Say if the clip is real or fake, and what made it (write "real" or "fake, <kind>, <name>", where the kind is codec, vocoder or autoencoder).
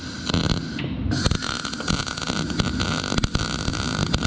real